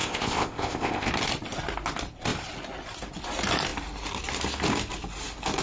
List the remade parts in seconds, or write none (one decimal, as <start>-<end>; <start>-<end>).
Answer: 0.0-1.1